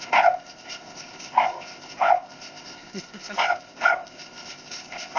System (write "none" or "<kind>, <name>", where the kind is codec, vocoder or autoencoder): codec, ZipCodec